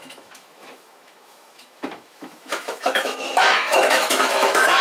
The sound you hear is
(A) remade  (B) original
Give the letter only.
A